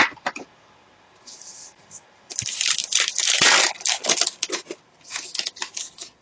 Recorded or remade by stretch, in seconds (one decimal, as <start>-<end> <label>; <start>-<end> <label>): 0.0-6.2 recorded